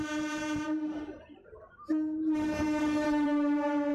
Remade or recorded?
remade